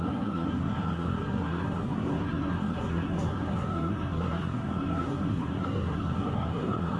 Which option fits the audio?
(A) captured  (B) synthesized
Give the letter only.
B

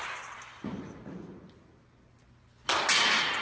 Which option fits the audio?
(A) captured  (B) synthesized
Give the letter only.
A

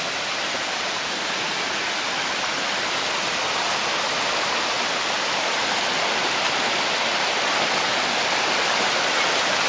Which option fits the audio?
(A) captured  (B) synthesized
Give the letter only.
A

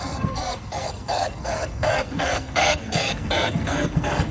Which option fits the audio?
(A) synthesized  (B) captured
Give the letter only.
A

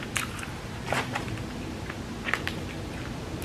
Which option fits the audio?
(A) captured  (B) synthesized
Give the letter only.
A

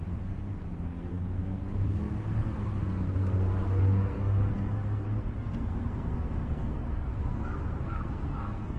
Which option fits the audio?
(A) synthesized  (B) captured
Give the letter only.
A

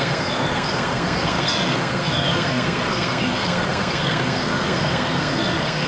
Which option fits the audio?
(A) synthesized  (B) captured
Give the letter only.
A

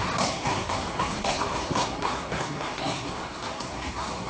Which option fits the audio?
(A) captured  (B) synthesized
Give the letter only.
B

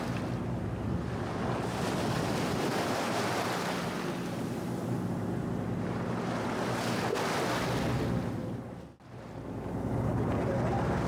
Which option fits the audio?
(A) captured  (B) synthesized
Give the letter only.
A